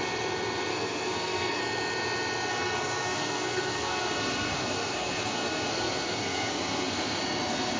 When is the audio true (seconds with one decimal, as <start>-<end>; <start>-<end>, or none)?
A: 0.0-0.7; 1.6-2.5; 7.2-7.8